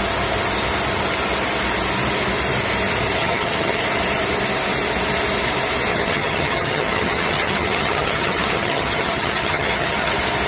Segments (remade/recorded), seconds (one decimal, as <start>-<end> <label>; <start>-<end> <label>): 0.0-3.2 recorded; 3.2-3.8 remade; 3.8-5.9 recorded; 5.9-10.1 remade; 10.1-10.5 recorded